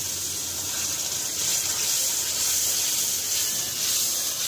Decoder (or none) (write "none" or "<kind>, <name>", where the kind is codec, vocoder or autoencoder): none